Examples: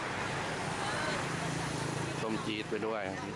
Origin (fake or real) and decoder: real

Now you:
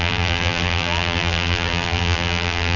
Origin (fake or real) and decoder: fake, vocoder, BigVGAN v2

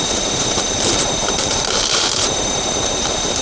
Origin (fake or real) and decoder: fake, vocoder, BigVGAN v2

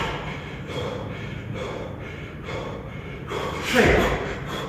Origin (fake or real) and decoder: real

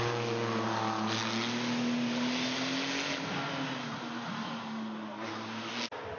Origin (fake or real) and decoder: real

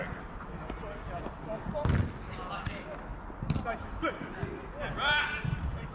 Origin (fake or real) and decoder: real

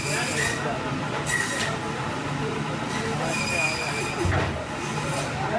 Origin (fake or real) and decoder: real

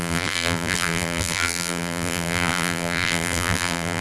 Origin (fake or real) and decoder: fake, vocoder, BigVGAN v2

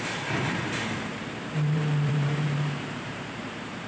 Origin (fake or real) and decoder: fake, vocoder, BigVGAN v2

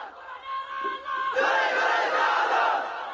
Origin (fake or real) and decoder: real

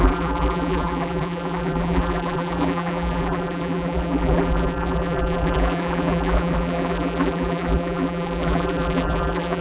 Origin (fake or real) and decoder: fake, vocoder, BigVGAN v2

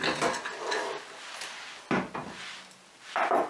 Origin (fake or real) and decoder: real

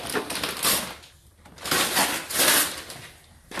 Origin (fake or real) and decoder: real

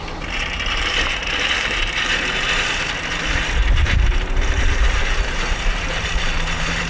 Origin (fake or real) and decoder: fake, vocoder, BigVGAN v2